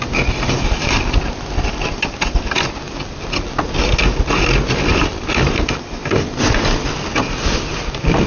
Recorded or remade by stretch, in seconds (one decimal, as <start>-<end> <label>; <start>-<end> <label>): 0.0-8.3 recorded